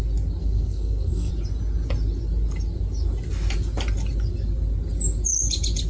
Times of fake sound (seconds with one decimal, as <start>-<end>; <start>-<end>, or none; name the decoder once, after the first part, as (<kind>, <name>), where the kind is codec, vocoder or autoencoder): 0.4-1.3 (codec, SNAC)